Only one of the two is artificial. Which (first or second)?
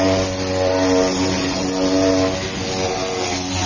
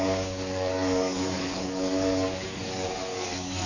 second